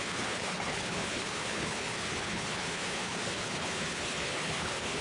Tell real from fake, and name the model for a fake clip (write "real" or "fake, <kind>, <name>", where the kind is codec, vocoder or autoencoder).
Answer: fake, codec, HILCodec